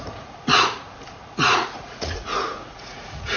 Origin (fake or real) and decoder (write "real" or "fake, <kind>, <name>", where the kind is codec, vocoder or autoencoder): fake, vocoder, Vocos